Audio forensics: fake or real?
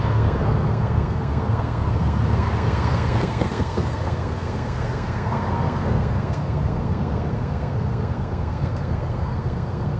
fake